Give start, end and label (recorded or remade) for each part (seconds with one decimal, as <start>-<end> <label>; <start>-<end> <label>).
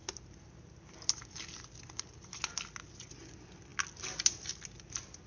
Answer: 0.0-5.3 recorded